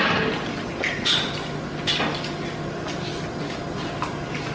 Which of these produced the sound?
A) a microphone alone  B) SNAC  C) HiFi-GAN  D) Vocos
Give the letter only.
A